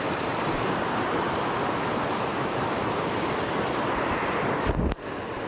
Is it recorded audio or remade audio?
recorded